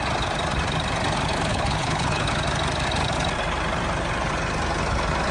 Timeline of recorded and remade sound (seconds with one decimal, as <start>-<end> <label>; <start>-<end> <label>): 0.0-1.5 recorded; 1.5-2.3 remade; 2.3-5.3 recorded